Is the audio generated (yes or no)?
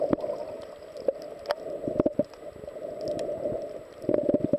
no